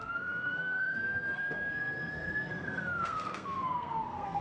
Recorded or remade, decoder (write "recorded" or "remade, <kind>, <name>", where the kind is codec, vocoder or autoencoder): remade, codec, SNAC